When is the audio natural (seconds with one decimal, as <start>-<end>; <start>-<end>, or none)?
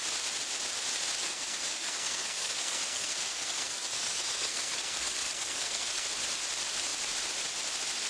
0.0-1.2; 6.1-8.1